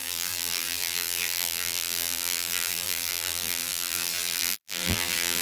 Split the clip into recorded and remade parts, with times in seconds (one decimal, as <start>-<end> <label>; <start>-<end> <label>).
0.0-5.4 remade